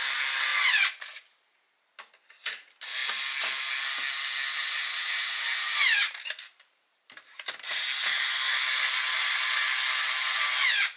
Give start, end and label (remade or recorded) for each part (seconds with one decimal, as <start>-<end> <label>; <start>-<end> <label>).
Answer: 0.0-0.5 recorded; 0.5-1.7 remade; 1.7-4.6 recorded; 4.6-7.8 remade; 7.8-11.0 recorded